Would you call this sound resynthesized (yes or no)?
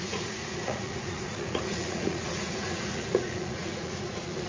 yes